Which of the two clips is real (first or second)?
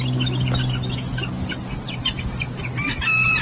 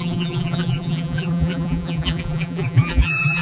first